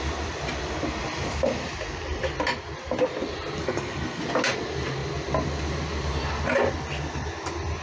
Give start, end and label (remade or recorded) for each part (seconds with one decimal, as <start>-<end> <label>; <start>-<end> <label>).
0.0-3.6 recorded; 3.6-4.2 remade; 4.2-7.8 recorded